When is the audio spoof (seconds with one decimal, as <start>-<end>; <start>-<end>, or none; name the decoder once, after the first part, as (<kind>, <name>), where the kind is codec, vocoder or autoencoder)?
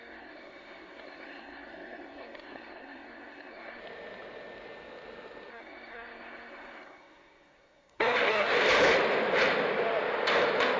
0.0-3.8 (codec, SNAC); 5.5-8.5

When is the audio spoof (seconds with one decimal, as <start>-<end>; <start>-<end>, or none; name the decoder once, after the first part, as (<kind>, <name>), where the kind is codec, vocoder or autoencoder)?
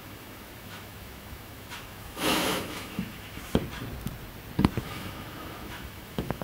0.0-3.6 (autoencoder, DAC-VAE); 4.8-6.4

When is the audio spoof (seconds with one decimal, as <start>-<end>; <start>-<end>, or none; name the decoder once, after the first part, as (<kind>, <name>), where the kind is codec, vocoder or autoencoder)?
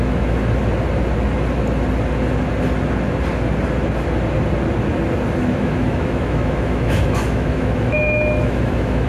0.0-0.4 (autoencoder, DAC-VAE); 5.4-9.1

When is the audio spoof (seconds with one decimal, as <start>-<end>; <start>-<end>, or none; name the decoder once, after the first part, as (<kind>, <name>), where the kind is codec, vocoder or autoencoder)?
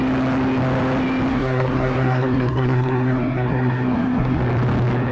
1.3-4.4 (codec, SNAC)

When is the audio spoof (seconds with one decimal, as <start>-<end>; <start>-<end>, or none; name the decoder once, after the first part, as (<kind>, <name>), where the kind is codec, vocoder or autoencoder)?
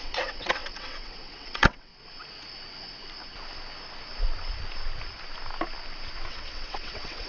0.0-1.9 (vocoder, WaveNeXt); 6.3-7.3